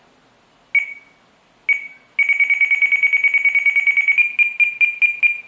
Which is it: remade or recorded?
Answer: recorded